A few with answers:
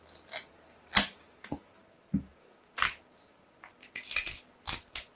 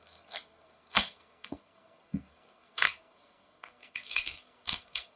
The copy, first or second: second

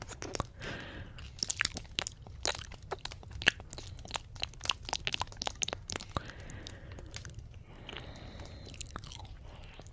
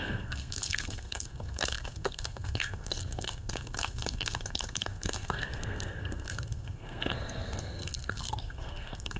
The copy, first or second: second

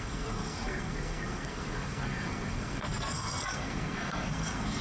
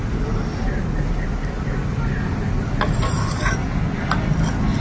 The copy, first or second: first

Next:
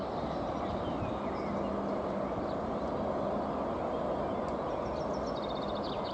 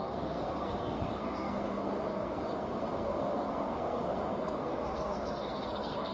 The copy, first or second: second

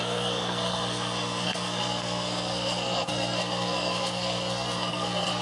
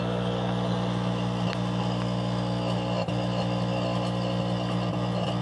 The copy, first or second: first